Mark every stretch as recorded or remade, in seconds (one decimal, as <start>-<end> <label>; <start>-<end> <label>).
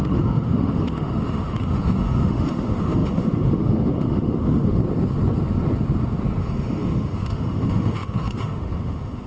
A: 0.0-4.8 remade; 4.8-6.4 recorded; 6.4-9.3 remade